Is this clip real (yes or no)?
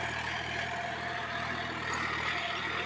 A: yes